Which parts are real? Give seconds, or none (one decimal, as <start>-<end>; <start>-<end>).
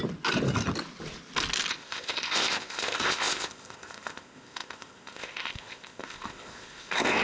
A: 0.0-1.7